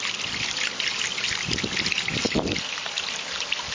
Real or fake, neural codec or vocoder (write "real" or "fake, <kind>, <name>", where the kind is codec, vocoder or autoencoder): real